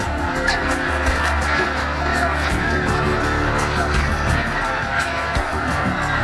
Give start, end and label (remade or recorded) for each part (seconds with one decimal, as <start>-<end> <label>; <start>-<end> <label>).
0.0-6.2 remade